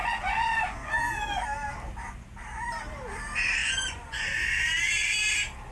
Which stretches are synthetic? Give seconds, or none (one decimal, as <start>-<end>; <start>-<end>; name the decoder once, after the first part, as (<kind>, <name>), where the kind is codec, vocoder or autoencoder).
0.0-0.9 (vocoder, Vocos); 3.6-4.4